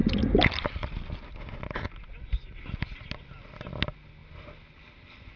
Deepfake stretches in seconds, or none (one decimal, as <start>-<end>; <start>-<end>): none